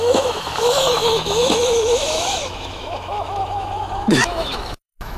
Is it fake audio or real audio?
fake